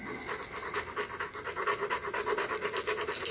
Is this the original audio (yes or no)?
yes